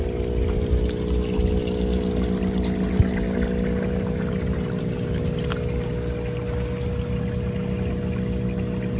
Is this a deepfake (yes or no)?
no